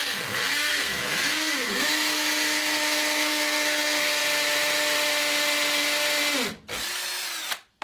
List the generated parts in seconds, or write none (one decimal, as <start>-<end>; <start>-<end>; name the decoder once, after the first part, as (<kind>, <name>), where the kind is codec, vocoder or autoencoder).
0.0-4.2 (codec, SNAC)